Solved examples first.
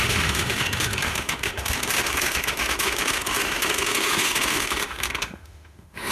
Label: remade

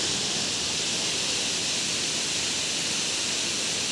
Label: recorded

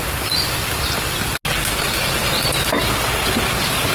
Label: recorded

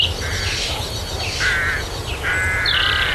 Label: recorded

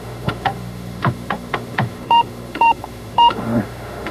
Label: remade